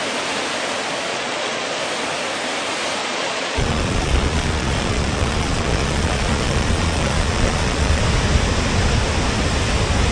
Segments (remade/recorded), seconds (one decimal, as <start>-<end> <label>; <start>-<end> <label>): 0.0-1.1 recorded; 1.1-1.8 remade; 1.8-3.0 recorded; 3.0-8.0 remade; 8.0-10.1 recorded